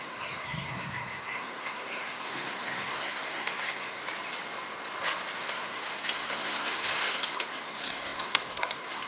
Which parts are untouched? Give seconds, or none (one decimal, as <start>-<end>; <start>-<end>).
4.0-5.4